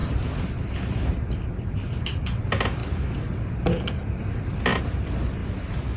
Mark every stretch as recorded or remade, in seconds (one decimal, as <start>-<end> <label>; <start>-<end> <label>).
0.0-6.0 recorded